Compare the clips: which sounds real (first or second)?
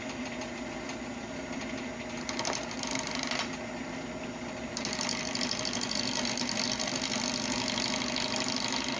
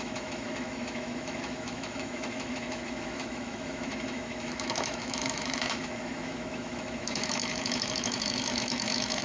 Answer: first